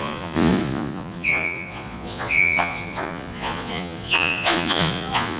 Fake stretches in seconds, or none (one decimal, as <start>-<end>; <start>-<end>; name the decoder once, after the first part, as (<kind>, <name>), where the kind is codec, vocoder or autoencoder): 0.0-5.4 (vocoder, Vocos)